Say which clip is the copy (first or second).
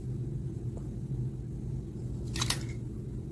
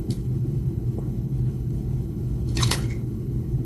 second